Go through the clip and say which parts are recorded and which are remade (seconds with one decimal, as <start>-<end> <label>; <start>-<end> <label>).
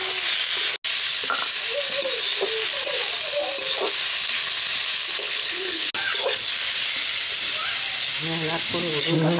0.0-5.2 recorded; 5.2-5.9 remade; 5.9-9.4 recorded